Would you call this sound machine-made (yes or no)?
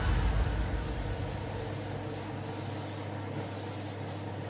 no